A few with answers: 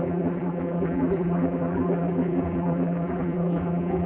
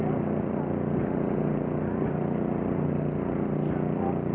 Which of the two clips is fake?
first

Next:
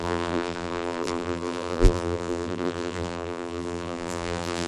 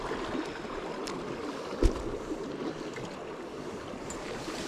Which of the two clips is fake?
first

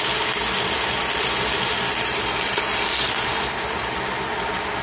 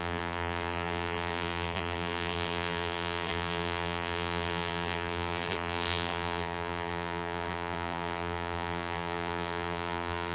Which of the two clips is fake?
second